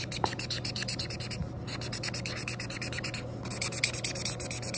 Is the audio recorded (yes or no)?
yes